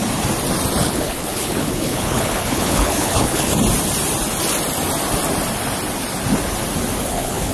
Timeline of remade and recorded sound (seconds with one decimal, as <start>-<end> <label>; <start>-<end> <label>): 0.0-0.8 recorded; 0.8-3.5 remade; 3.5-7.1 recorded; 7.1-7.5 remade